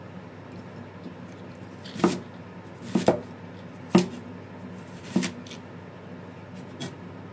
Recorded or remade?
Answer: recorded